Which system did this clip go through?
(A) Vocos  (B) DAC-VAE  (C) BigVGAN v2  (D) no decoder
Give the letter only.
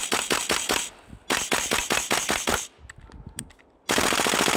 D